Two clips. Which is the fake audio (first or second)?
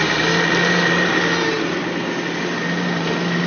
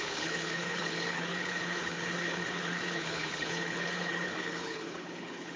second